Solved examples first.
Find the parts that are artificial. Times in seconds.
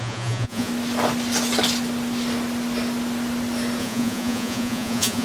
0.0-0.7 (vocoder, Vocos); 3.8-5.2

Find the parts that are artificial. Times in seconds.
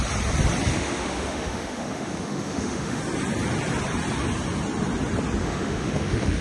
0.7-3.0 (autoencoder, DAC-VAE); 5.4-6.4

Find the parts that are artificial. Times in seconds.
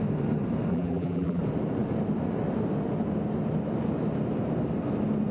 0.7-1.4 (vocoder, BigVGAN v2)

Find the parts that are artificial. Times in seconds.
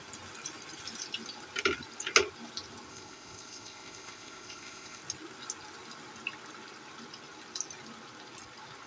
2.9-5.0 (codec, ZipCodec)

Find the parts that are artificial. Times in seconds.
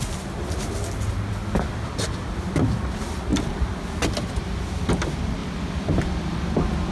3.3-3.8 (vocoder, BigVGAN v2); 5.4-6.9